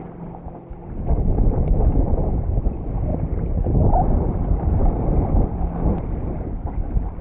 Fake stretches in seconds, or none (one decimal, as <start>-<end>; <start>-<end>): 3.1-3.7